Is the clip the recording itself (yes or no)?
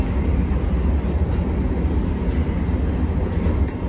yes